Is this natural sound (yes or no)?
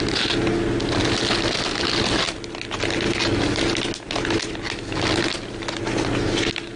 yes